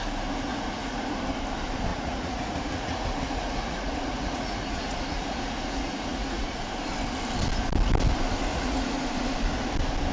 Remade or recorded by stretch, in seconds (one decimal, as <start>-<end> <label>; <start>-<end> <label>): 0.0-0.5 recorded; 0.5-1.1 remade; 1.1-1.9 recorded; 1.9-6.7 remade; 6.7-8.5 recorded; 8.5-9.1 remade; 9.1-10.1 recorded